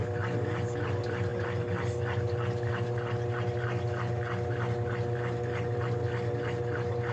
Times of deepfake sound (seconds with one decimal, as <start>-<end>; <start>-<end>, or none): none